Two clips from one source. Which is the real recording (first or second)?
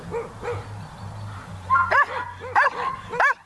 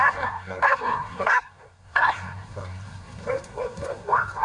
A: first